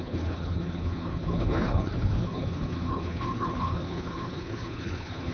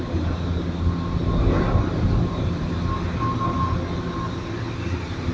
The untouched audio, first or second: second